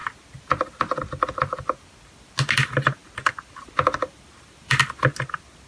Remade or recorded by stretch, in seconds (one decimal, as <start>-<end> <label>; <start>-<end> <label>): 0.0-3.0 recorded; 3.0-4.8 remade; 4.8-5.7 recorded